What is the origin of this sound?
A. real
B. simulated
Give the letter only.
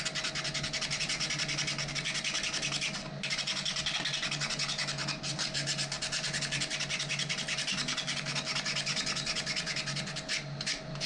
A